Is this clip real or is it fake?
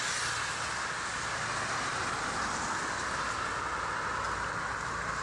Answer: real